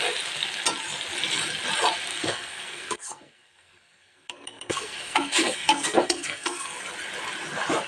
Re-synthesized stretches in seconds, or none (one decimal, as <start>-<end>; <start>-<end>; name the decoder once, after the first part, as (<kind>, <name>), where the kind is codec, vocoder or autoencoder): 2.1-6.8 (codec, SNAC)